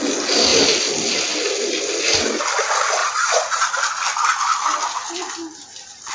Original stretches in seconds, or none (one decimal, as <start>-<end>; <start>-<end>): 0.0-3.0; 3.7-6.1